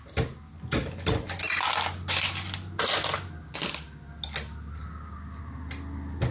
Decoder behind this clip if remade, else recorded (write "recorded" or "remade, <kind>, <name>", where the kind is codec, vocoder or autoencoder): recorded